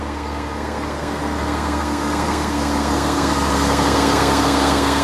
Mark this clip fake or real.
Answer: fake